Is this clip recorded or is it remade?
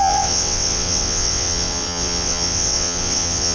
remade